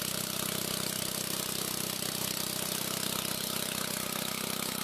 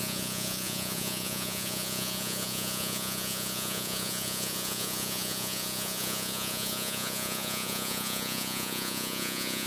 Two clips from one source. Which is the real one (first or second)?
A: first